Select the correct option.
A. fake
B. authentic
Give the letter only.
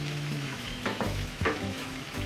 A